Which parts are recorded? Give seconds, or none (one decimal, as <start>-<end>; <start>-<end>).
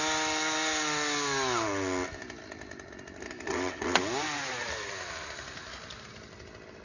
0.0-3.5; 4.0-6.8